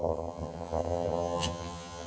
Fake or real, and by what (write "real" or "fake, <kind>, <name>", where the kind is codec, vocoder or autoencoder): fake, vocoder, HiFi-GAN